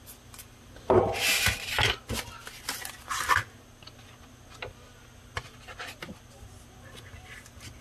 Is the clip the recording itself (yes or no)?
yes